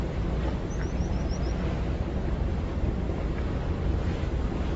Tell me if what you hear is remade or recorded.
recorded